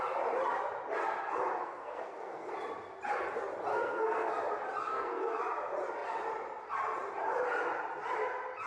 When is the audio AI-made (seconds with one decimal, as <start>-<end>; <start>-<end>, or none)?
1.6-2.5; 3.7-4.3; 4.9-5.4